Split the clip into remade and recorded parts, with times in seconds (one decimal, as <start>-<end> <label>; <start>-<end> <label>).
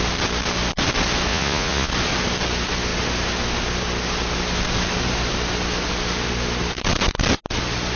0.0-1.3 recorded; 1.3-1.9 remade; 1.9-8.0 recorded